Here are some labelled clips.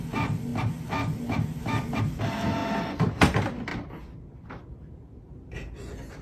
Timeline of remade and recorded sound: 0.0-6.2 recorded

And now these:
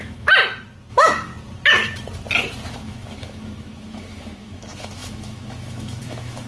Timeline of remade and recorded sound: 0.0-0.4 remade; 0.4-0.9 recorded; 0.9-1.3 remade; 1.3-2.7 recorded; 2.7-6.5 remade

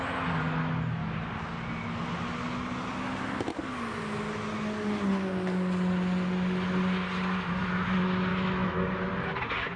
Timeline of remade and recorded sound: 0.0-8.3 recorded; 8.3-8.9 remade; 8.9-9.8 recorded

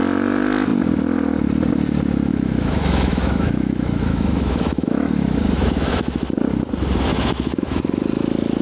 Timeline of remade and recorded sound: 0.0-2.3 recorded; 2.3-6.3 remade; 6.3-7.1 recorded; 7.1-7.8 remade; 7.8-8.6 recorded